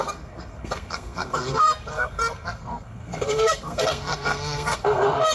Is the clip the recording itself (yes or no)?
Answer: no